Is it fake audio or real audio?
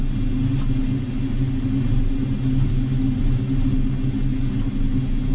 real